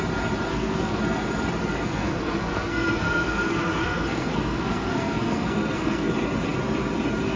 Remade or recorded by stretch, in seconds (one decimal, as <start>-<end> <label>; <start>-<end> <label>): 0.0-0.5 recorded; 0.5-1.0 remade; 1.0-1.7 recorded; 1.7-6.1 remade; 6.1-7.4 recorded